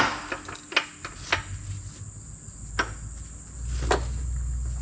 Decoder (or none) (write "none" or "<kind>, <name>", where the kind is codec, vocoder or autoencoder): none